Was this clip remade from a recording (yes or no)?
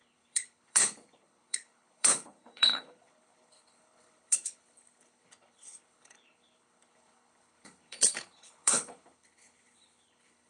yes